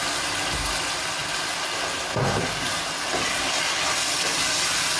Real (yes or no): yes